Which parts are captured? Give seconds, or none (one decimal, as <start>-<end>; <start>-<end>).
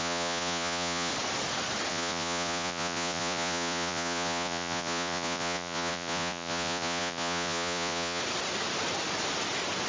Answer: 1.1-1.9; 8.2-9.9